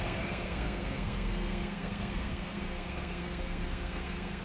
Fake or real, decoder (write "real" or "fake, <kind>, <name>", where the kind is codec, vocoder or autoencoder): fake, codec, SNAC